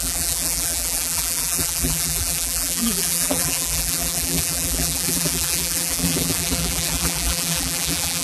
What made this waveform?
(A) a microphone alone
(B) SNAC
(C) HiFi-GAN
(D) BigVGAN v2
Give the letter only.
D